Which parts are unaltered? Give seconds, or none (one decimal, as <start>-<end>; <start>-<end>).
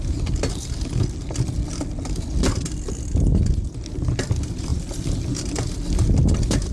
0.0-4.7; 5.3-6.7